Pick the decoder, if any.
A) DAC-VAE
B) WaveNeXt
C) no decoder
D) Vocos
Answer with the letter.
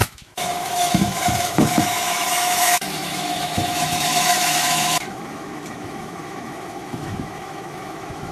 A